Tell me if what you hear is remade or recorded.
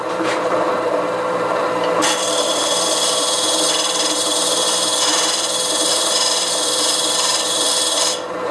remade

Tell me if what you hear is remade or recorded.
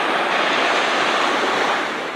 remade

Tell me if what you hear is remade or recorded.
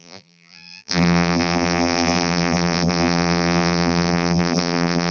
remade